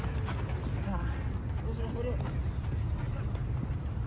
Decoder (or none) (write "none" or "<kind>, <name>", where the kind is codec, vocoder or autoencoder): none